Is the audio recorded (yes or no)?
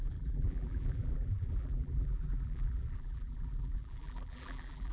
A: no